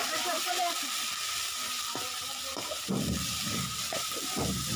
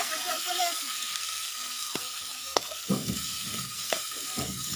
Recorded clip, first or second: first